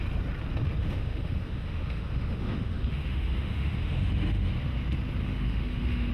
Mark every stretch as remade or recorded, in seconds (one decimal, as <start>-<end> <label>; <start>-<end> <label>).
0.0-0.8 recorded; 0.8-4.5 remade; 4.5-5.2 recorded; 5.2-6.1 remade

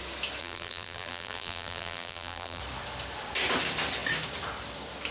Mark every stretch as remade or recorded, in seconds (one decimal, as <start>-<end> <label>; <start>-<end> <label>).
0.0-0.4 recorded; 0.4-2.6 remade; 2.6-5.1 recorded

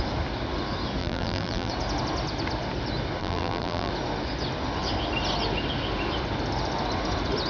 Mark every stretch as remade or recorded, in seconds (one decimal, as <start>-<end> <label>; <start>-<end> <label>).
0.0-1.0 recorded; 1.0-1.7 remade; 1.7-3.2 recorded; 3.2-3.9 remade; 3.9-7.5 recorded

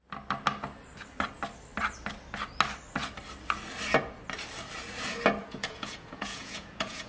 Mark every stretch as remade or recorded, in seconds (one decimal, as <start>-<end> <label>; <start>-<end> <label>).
0.0-5.4 recorded; 5.4-7.1 remade

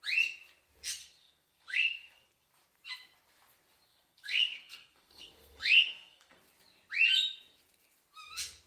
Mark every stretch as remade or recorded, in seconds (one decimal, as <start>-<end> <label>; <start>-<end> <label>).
0.0-1.0 recorded; 1.0-2.5 remade; 2.5-3.9 recorded; 3.9-6.4 remade; 6.4-8.7 recorded